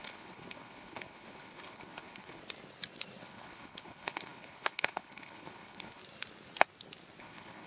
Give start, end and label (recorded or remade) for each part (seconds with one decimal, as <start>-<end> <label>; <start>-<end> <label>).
0.0-2.4 remade; 2.4-3.2 recorded; 3.2-6.0 remade; 6.0-7.2 recorded; 7.2-7.7 remade